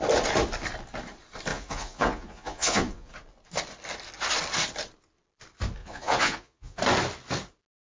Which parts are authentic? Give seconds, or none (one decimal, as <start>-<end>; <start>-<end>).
0.0-1.5; 3.1-5.8; 6.8-7.9